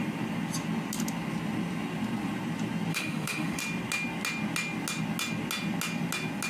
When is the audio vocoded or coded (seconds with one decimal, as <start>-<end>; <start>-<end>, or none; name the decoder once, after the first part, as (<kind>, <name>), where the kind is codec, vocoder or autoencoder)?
2.9-3.6 (autoencoder, DAC-VAE)